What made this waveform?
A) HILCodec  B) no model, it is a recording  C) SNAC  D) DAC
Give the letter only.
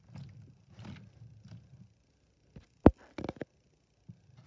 B